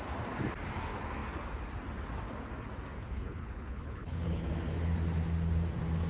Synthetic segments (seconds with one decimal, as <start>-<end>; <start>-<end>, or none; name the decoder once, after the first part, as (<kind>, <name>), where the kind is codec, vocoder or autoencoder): 3.0-4.5 (codec, HILCodec)